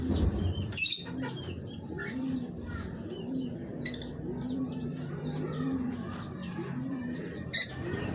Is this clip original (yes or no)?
no